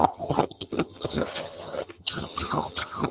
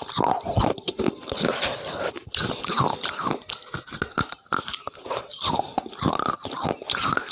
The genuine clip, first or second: second